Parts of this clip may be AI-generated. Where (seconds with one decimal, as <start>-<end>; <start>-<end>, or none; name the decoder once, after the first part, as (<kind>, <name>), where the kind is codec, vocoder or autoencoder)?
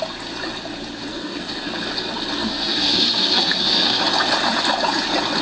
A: 1.1-1.7 (codec, SNAC); 2.4-4.0